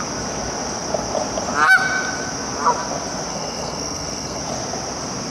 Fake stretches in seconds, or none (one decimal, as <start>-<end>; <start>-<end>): 3.3-4.4